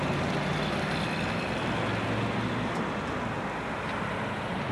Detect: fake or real real